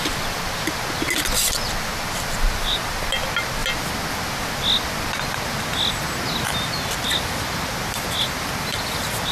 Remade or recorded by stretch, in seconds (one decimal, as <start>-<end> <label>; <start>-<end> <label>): 0.0-1.9 recorded; 1.9-3.1 remade; 3.1-9.3 recorded